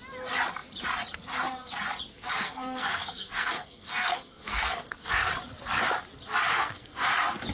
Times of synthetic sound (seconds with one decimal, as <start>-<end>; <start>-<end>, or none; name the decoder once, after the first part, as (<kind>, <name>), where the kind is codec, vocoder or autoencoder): 2.1-5.3 (codec, SNAC); 6.5-7.1